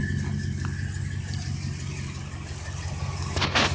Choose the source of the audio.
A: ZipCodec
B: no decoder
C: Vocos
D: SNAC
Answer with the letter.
B